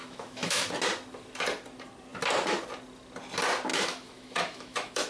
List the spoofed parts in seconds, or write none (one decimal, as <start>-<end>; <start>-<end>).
0.0-0.6; 3.7-5.1